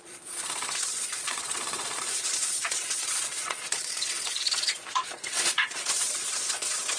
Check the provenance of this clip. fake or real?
fake